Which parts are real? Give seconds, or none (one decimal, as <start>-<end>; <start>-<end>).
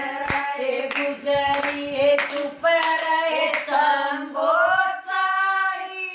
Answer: 0.0-6.1